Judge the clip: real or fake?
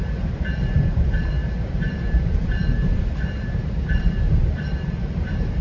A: fake